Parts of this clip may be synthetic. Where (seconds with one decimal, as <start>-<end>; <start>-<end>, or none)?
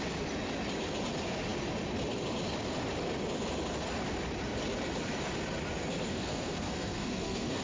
6.1-7.6